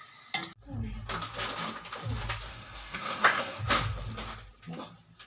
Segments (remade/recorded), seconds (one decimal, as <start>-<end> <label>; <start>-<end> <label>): 0.0-2.5 recorded; 2.5-3.6 remade; 3.6-5.3 recorded